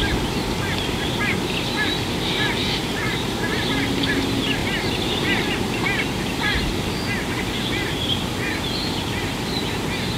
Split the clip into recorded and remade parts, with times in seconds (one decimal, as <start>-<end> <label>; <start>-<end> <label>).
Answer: 0.0-10.2 recorded